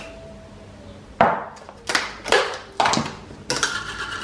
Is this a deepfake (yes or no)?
no